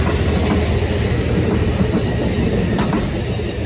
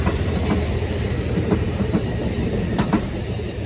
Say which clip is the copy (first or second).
second